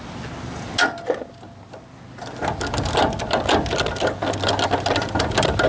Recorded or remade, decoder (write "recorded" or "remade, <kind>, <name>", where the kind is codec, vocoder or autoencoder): recorded